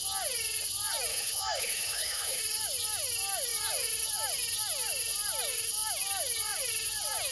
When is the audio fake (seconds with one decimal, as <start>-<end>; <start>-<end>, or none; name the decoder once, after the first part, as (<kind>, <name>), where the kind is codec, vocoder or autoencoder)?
1.1-2.4 (autoencoder, DAC-VAE)